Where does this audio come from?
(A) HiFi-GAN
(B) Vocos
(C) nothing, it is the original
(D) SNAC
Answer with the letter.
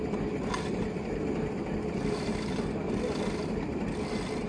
C